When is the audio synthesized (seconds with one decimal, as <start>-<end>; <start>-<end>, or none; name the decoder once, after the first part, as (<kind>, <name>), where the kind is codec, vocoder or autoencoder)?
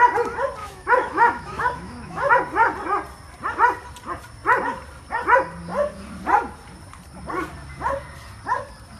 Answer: 0.6-2.3 (autoencoder, DAC-VAE)